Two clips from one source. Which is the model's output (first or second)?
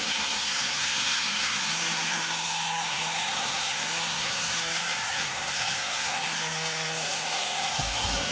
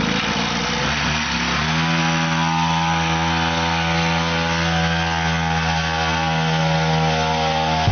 first